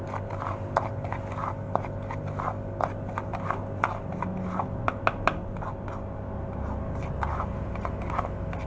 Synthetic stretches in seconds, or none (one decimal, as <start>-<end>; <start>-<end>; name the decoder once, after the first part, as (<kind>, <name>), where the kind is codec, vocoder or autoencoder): none